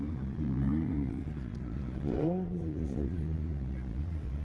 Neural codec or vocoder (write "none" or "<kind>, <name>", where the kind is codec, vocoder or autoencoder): vocoder, Vocos